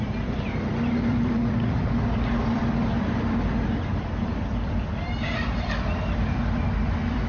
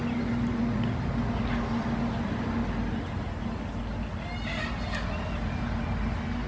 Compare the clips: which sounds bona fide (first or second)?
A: second